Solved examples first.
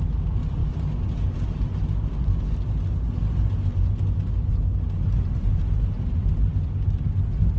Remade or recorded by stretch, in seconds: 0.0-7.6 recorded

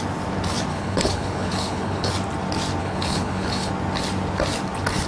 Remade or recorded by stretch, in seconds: 0.0-0.7 recorded; 0.7-2.1 remade; 2.1-2.8 recorded; 2.8-3.7 remade; 3.7-5.1 recorded

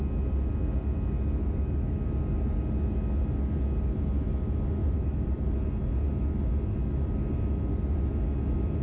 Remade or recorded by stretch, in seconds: 0.0-4.8 recorded; 4.8-5.5 remade; 5.5-8.8 recorded